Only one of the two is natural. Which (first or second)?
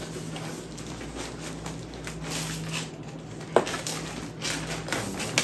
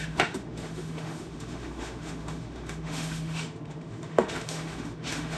first